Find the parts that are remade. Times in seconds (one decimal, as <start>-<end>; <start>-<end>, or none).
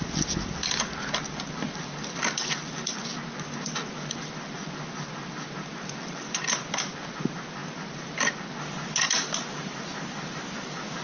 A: none